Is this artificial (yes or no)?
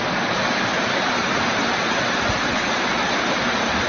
yes